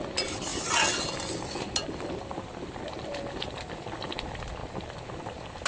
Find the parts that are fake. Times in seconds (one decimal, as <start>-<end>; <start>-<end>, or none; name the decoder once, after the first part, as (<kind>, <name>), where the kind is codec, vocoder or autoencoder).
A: none